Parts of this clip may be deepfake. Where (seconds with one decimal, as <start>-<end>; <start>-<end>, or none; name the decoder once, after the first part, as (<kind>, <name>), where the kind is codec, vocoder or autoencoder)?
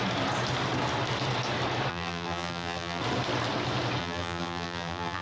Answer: 1.9-3.0 (vocoder, BigVGAN v2); 4.0-5.2